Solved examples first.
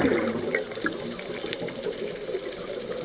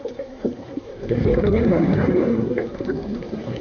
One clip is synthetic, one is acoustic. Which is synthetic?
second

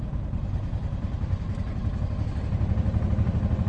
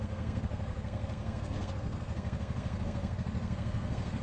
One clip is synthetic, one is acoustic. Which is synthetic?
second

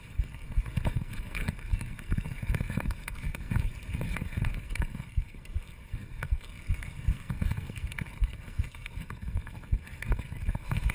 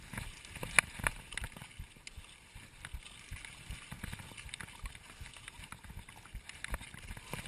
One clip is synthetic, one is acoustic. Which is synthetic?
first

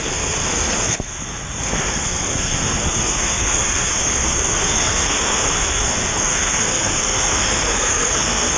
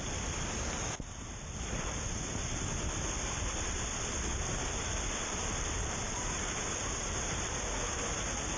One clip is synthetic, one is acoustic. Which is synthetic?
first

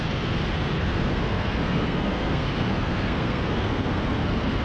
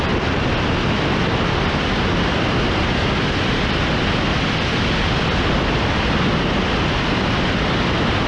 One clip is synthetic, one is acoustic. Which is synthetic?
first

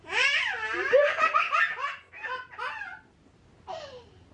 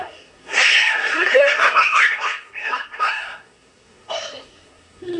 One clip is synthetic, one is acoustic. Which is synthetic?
second